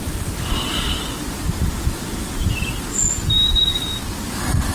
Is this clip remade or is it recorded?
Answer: recorded